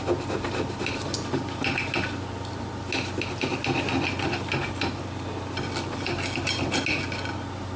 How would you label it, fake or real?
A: real